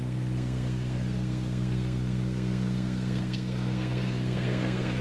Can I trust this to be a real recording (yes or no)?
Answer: no